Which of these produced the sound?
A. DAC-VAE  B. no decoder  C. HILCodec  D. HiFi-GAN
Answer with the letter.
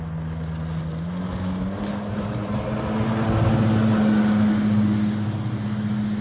B